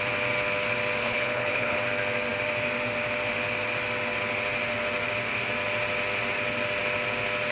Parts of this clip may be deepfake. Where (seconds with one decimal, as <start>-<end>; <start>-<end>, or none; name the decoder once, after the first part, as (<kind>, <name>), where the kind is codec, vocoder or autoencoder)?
1.0-1.8 (codec, HILCodec)